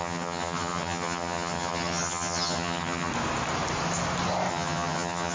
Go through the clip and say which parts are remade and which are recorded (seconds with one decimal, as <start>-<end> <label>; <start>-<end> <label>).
0.0-3.1 remade; 3.1-4.5 recorded; 4.5-5.3 remade